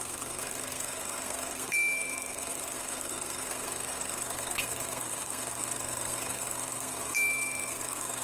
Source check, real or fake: fake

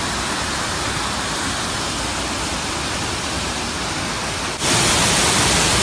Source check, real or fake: real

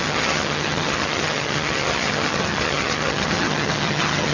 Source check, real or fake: fake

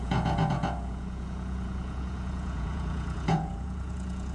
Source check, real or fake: fake